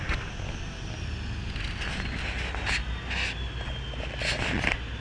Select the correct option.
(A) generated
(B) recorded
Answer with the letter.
B